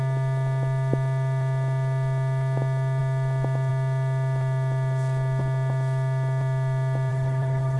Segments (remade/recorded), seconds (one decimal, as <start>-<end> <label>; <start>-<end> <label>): 0.0-7.1 recorded; 7.1-7.8 remade